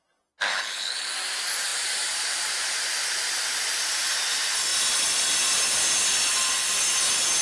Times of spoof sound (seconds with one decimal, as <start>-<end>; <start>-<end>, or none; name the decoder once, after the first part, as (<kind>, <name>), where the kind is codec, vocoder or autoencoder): 0.5-1.1 (codec, HILCodec)

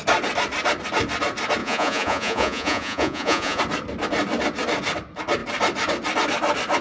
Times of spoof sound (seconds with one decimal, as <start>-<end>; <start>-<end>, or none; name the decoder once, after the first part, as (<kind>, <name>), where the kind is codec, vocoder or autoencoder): 1.6-3.6 (vocoder, Vocos)

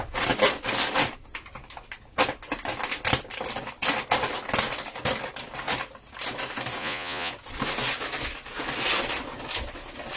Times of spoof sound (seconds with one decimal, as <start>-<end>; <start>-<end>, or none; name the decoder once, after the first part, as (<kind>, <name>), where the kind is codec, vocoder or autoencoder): 6.8-7.3 (vocoder, Vocos)

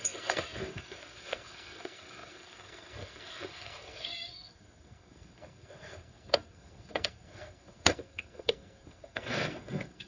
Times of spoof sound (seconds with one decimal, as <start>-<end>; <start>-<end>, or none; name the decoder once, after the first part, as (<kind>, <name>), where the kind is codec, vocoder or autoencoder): 0.0-10.1 (codec, SNAC)

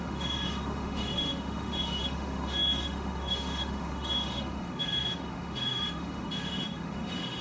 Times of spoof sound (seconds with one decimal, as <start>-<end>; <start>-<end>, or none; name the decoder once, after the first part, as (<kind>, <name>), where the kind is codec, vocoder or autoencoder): 0.0-7.4 (autoencoder, DAC-VAE)

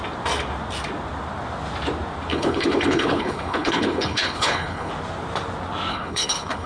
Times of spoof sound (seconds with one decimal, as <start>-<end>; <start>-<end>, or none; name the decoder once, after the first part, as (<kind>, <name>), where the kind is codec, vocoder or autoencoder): 2.3-4.9 (codec, HILCodec); 5.9-6.7

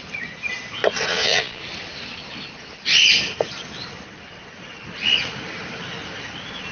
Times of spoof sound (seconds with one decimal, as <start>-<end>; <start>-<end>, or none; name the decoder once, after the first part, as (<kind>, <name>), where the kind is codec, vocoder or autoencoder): 1.1-1.6 (vocoder, Vocos)